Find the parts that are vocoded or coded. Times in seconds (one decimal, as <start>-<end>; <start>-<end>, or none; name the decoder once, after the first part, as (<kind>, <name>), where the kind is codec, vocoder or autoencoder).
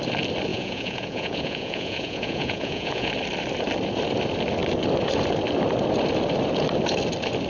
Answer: 0.5-3.1 (vocoder, Vocos)